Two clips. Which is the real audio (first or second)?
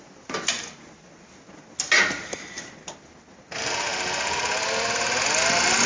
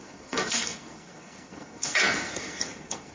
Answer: first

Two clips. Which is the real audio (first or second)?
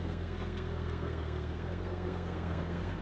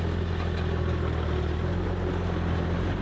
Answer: second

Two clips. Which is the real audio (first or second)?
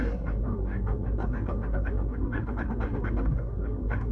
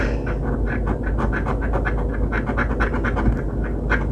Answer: second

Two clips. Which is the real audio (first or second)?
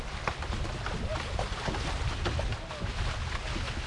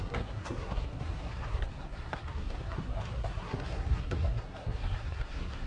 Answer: first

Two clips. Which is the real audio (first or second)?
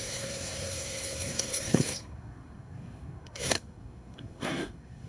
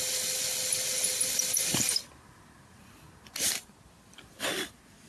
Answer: second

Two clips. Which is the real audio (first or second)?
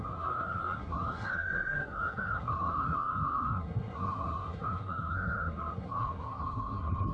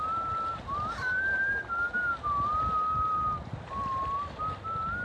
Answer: second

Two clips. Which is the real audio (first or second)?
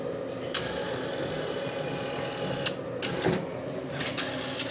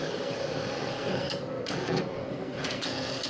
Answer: first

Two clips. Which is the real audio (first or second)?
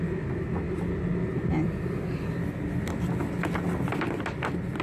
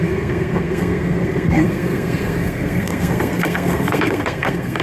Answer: first